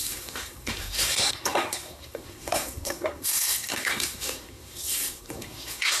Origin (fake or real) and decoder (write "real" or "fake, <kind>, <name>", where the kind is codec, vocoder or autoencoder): fake, codec, SNAC